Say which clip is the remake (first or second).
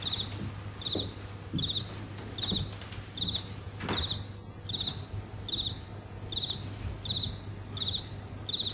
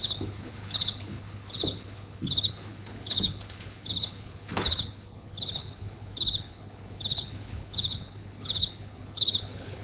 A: second